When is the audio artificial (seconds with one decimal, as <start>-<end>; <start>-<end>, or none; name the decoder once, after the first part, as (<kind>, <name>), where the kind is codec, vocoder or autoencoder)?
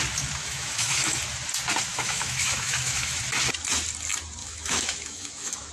0.4-1.2 (autoencoder, DAC-VAE); 1.9-3.2; 4.4-5.7